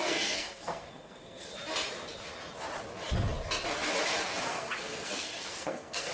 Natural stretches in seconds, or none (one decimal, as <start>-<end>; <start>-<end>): 1.5-4.5